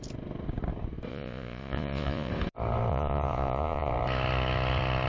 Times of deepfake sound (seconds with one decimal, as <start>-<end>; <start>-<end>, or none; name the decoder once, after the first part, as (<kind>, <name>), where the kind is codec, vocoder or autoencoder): 1.1-2.3 (vocoder, Vocos); 2.9-3.9

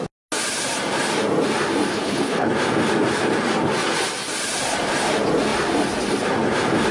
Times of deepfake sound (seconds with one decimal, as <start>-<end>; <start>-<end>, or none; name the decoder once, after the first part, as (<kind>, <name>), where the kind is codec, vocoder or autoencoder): 1.9-2.5 (codec, HILCodec)

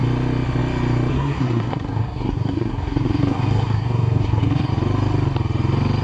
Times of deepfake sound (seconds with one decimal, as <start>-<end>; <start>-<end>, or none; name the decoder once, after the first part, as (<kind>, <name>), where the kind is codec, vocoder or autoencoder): 1.1-4.7 (codec, SNAC)

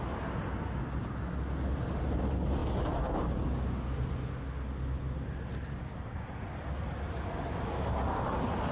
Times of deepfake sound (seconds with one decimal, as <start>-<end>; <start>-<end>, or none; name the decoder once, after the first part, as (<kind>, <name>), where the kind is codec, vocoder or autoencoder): none

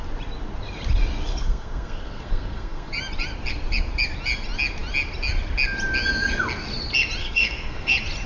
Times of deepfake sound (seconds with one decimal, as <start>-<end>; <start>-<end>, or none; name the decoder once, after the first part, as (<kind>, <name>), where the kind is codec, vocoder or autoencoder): 1.3-2.9 (codec, SNAC); 7.2-7.9

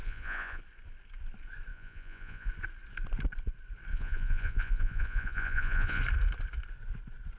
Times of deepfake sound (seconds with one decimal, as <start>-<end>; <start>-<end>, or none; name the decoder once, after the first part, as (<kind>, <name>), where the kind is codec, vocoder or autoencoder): 0.0-0.6 (vocoder, Vocos); 1.7-2.5; 3.9-6.0